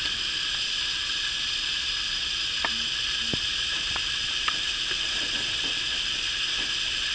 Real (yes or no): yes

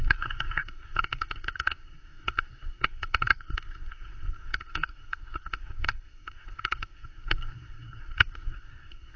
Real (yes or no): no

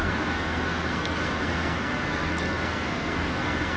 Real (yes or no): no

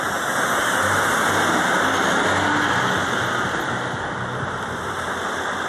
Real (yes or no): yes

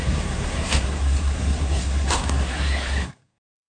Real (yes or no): no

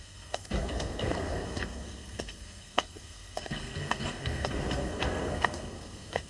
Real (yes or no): no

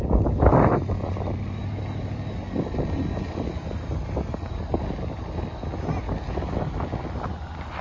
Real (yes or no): yes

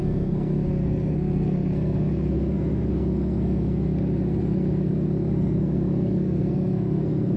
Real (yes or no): no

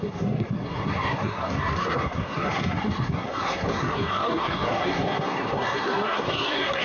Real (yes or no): no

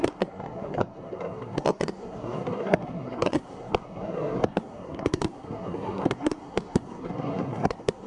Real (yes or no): no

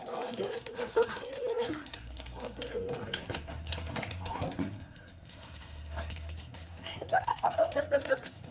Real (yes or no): no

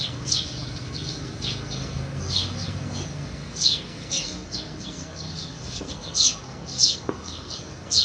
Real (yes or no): no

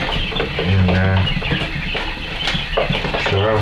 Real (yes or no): yes